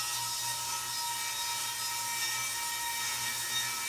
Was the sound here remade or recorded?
recorded